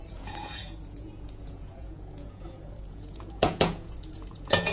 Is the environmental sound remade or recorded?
remade